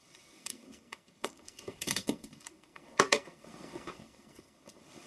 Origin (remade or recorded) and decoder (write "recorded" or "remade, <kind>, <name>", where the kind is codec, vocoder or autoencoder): remade, codec, SNAC